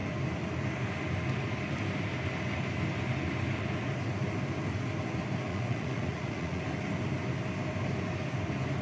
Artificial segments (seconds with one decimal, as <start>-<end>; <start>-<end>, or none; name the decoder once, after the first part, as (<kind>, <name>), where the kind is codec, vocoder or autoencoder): 5.5-6.6 (vocoder, Vocos)